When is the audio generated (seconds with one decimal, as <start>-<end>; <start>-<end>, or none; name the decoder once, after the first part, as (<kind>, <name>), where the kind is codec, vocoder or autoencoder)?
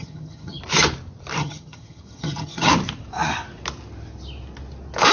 0.0-0.6 (vocoder, HiFi-GAN); 1.4-2.7